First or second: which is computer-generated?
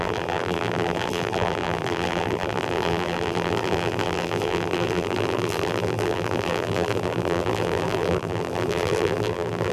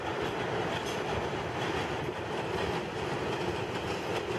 first